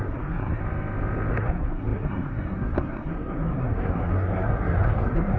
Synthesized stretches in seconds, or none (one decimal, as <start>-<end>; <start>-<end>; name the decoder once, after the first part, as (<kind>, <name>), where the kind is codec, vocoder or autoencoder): 0.0-0.6 (codec, SNAC); 1.3-5.4